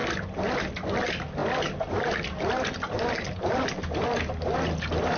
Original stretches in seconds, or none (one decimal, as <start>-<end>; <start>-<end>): 0.7-5.2